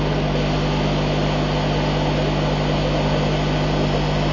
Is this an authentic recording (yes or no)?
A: yes